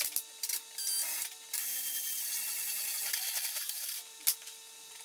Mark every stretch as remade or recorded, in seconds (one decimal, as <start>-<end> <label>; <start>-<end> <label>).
0.0-5.0 recorded